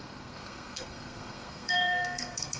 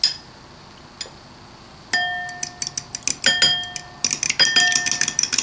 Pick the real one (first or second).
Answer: second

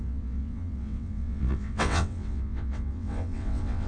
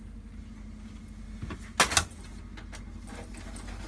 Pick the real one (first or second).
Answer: second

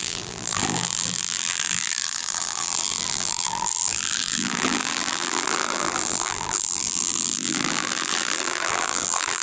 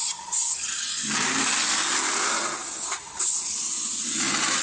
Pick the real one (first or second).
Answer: second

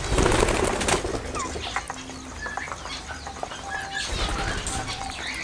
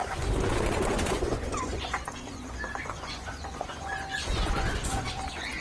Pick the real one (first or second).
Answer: first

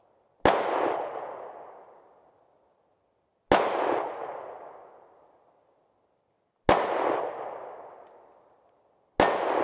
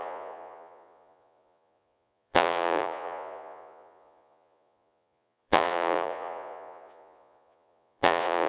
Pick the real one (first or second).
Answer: first